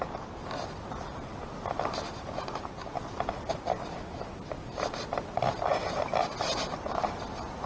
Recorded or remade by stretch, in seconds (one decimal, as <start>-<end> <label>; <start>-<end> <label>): 0.0-7.7 recorded